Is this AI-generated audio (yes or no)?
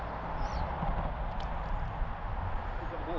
no